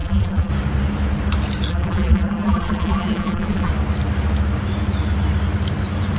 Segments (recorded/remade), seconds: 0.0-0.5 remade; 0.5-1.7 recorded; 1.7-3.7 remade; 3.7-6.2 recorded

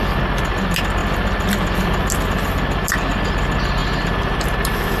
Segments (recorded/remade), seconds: 0.0-3.8 recorded; 3.8-5.0 remade

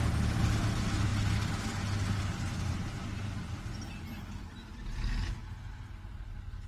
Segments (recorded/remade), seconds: 0.0-6.7 recorded

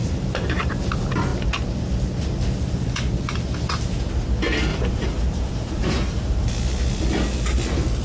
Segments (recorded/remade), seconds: 0.0-0.7 remade; 0.7-4.7 recorded; 4.7-6.5 remade; 6.5-8.0 recorded

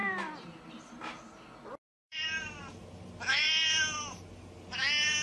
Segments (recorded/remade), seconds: 0.0-1.0 remade; 1.0-1.7 recorded; 1.7-4.8 remade; 4.8-5.2 recorded

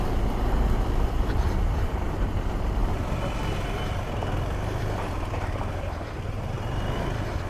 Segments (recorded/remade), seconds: 0.0-2.8 recorded; 2.8-7.5 remade

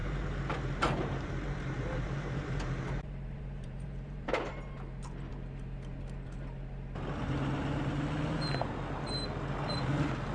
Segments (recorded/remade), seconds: 0.0-4.8 remade; 4.8-10.3 recorded